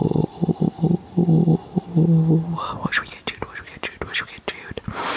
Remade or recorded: recorded